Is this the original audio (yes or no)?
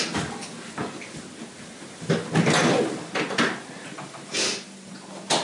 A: yes